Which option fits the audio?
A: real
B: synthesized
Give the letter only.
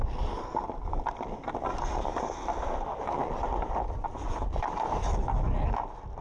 A